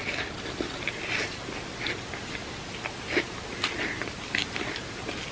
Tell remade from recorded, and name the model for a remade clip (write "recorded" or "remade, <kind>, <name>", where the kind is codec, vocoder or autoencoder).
recorded